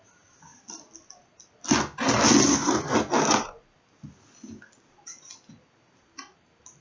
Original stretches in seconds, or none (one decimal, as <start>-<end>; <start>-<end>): 0.0-6.8